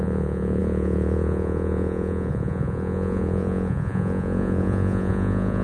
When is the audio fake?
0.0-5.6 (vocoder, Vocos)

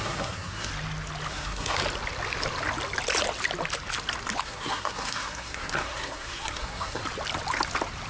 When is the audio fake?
0.0-0.7 (codec, SNAC); 1.3-1.8; 4.4-7.0